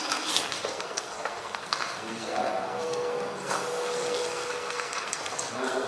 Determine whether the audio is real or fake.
fake